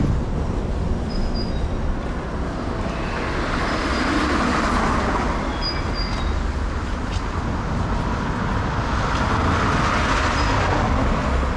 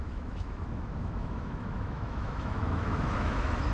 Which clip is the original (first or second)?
first